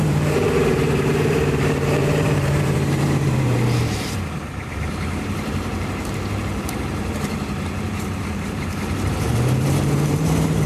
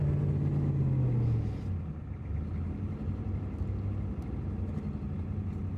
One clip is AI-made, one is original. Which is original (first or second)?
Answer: second